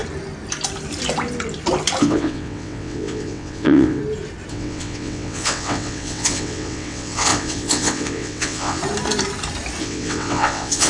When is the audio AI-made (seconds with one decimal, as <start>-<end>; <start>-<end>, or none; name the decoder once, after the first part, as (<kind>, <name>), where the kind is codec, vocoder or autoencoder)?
2.0-4.0 (vocoder, WaveNeXt); 4.5-8.8; 9.8-10.9